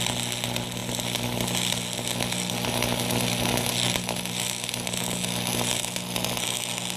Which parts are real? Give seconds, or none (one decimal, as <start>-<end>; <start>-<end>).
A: 0.0-7.0